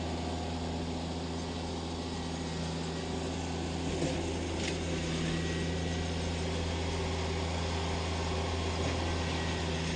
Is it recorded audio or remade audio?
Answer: recorded